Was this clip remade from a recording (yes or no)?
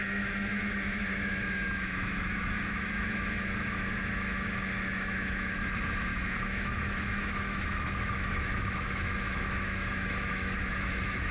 yes